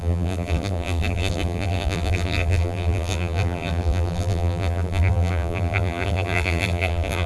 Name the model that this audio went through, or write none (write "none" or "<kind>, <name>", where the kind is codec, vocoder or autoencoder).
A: vocoder, BigVGAN v2